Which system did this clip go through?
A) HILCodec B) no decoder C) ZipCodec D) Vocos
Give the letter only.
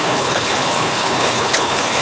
A